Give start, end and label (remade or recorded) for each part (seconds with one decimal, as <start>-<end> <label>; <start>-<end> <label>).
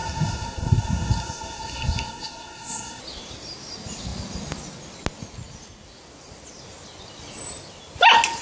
0.0-3.0 remade; 3.0-8.4 recorded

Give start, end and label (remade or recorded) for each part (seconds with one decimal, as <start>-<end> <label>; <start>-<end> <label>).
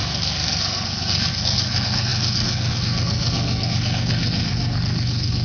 0.0-5.4 remade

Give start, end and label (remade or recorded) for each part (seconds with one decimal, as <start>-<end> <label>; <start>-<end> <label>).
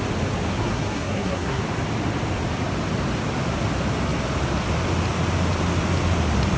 0.0-0.5 recorded; 0.5-1.6 remade; 1.6-6.6 recorded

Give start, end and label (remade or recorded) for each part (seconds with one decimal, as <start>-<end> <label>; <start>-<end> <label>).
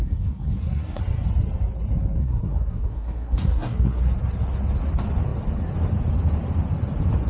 0.0-1.0 remade; 1.0-2.2 recorded; 2.2-4.0 remade; 4.0-7.3 recorded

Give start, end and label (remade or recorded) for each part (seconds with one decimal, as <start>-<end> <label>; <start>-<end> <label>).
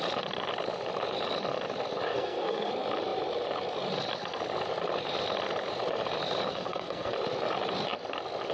0.0-2.1 recorded; 2.1-2.7 remade; 2.7-6.5 recorded; 6.5-7.1 remade; 7.1-8.5 recorded